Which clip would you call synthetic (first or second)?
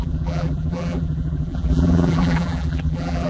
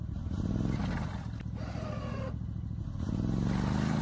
first